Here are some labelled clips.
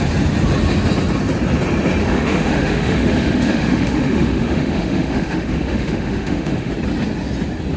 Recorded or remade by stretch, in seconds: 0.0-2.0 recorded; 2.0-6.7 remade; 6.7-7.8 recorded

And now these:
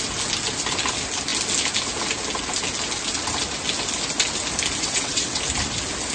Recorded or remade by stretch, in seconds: 0.0-4.8 recorded; 4.8-5.4 remade; 5.4-6.1 recorded

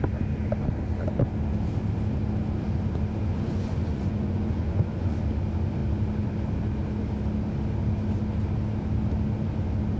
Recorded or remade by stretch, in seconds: 0.0-3.3 recorded; 3.3-5.2 remade; 5.2-10.0 recorded

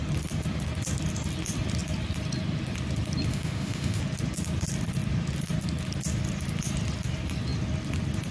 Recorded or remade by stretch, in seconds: 0.0-3.3 recorded; 3.3-4.0 remade; 4.0-8.3 recorded

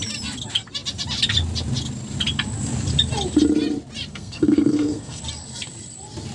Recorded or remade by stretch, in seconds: 0.0-4.1 recorded; 4.1-5.2 remade; 5.2-6.3 recorded

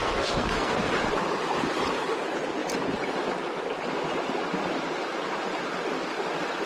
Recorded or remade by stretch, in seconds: 0.0-0.9 remade; 0.9-6.7 recorded